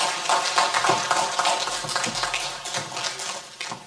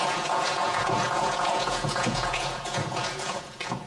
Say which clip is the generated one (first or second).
second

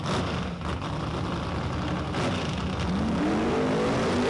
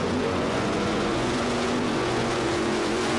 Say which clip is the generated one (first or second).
second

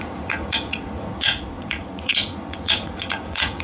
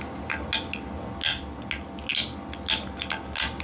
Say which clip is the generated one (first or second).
first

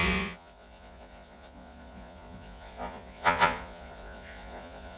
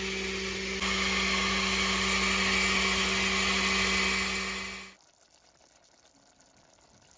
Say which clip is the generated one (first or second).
first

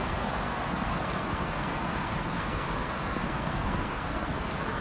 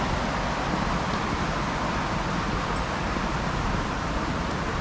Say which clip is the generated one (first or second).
first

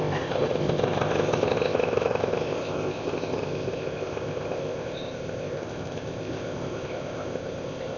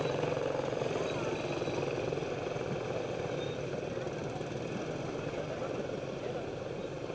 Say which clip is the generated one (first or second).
first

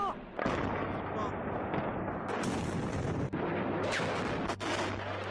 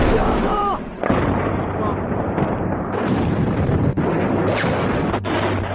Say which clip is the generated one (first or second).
second